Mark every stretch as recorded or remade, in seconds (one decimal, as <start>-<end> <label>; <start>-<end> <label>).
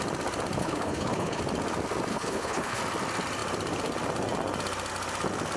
0.0-0.6 recorded; 0.6-1.4 remade; 1.4-2.1 recorded; 2.1-2.8 remade; 2.8-5.6 recorded